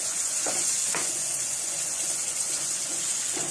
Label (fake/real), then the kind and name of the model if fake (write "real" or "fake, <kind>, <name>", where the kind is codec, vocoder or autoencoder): fake, vocoder, Vocos